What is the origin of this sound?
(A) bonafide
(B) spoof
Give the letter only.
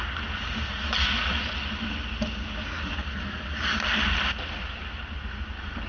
A